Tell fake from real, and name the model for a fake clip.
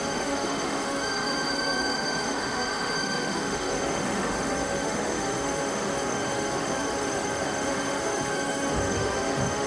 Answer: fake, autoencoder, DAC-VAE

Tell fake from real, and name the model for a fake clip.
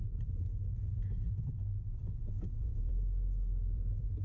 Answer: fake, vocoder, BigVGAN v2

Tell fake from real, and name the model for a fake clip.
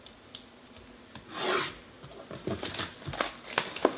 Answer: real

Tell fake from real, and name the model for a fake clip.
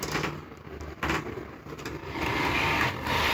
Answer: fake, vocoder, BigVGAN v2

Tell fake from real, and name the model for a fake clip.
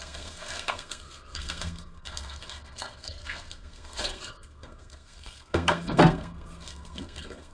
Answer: fake, codec, SNAC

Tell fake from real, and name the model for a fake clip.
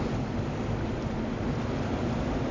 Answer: real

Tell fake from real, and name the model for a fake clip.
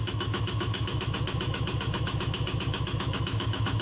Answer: fake, autoencoder, DAC-VAE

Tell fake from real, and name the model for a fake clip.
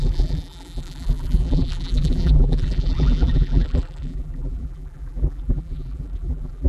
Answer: fake, vocoder, BigVGAN v2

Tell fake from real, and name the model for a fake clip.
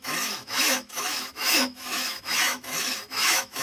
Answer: fake, autoencoder, DAC-VAE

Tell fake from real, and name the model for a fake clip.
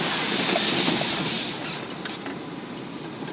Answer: real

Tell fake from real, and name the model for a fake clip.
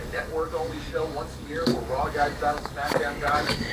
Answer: fake, codec, DAC